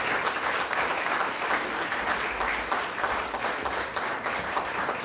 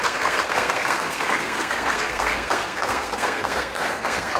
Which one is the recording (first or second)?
first